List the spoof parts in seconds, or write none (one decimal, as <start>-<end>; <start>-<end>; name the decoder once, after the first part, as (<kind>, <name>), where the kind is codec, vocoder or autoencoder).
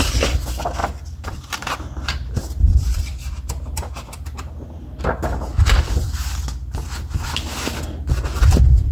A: 0.8-5.0 (vocoder, BigVGAN v2)